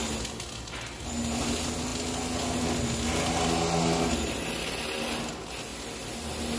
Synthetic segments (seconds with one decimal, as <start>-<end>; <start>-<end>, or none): none